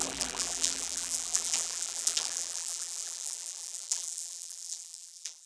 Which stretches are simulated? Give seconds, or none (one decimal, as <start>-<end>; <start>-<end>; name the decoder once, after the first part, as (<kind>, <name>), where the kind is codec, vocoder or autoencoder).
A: 0.0-5.5 (vocoder, BigVGAN v2)